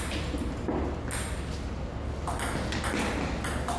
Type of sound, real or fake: real